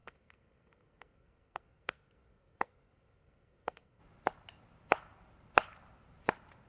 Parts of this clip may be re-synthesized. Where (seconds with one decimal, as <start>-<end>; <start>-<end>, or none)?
0.0-4.0